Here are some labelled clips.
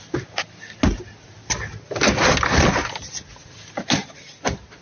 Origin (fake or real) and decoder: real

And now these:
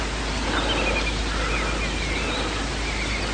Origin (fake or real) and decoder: real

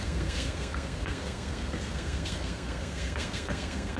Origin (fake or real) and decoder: fake, codec, SNAC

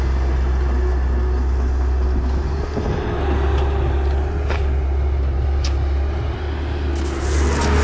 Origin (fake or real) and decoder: real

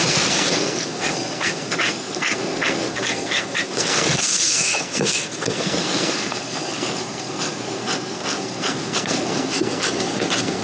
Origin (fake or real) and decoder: fake, codec, SNAC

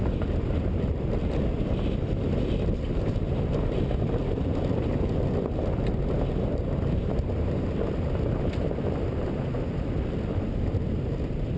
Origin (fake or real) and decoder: real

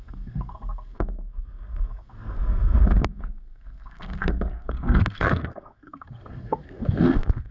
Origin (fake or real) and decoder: fake, codec, SNAC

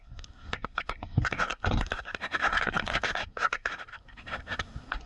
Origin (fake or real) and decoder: fake, codec, SNAC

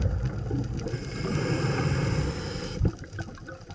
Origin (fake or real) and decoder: real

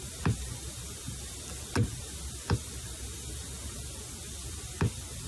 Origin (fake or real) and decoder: real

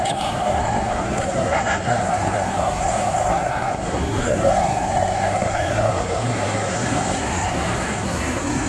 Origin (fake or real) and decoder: fake, codec, SNAC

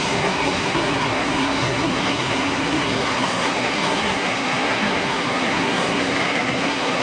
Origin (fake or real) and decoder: fake, codec, SNAC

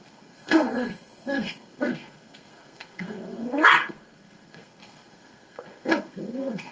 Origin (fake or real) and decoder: fake, codec, SNAC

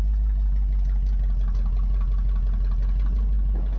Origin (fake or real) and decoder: real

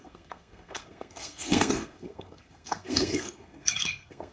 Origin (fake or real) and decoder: fake, codec, SNAC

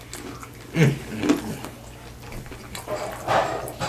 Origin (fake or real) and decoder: real